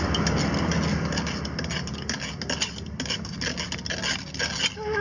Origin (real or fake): real